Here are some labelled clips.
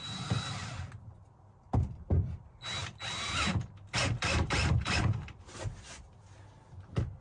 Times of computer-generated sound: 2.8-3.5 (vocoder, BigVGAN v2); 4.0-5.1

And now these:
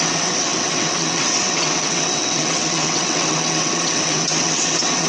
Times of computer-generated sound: 0.0-5.1 (vocoder, WaveNeXt)

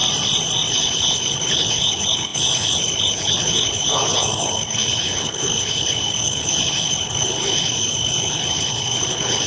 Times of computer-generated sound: 0.7-9.5 (codec, HILCodec)

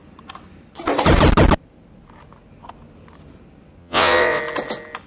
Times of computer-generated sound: 3.8-4.4 (vocoder, WaveNeXt)